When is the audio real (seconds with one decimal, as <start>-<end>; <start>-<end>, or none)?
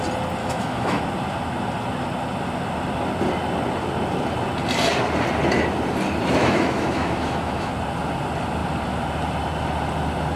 0.0-0.4; 1.0-6.4; 7.7-10.4